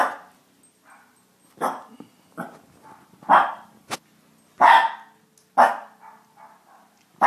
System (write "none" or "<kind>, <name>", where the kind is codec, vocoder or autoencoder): none